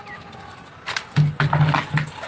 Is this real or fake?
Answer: real